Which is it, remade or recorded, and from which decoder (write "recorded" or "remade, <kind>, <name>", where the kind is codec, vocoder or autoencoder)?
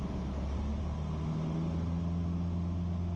recorded